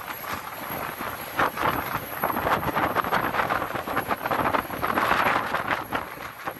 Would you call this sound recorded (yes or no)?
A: yes